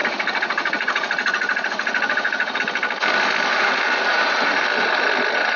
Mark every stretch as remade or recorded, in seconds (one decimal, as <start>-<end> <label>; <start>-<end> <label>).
0.0-2.6 remade; 2.6-3.5 recorded; 3.5-4.6 remade; 4.6-5.6 recorded